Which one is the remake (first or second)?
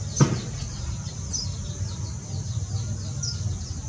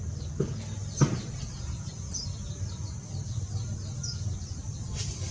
second